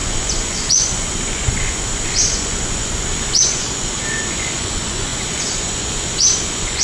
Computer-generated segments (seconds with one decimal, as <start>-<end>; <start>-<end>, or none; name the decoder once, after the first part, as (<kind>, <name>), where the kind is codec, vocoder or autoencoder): 0.0-6.8 (vocoder, Vocos)